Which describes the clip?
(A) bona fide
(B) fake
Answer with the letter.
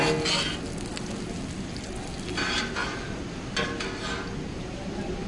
A